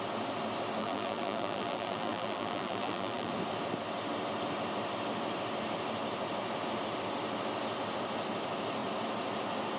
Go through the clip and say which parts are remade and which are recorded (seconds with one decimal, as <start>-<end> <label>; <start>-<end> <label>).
0.0-0.8 recorded; 0.8-3.3 remade; 3.3-9.8 recorded